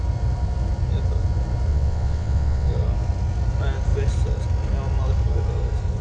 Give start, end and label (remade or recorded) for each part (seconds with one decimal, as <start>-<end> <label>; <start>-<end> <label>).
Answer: 0.0-1.7 recorded; 1.7-2.7 remade; 2.7-6.0 recorded